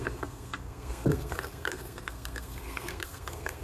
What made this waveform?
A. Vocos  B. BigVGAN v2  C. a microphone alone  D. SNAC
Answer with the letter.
D